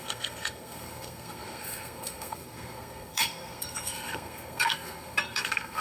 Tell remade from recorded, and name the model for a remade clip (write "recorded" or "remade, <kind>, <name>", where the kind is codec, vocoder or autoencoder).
remade, codec, SNAC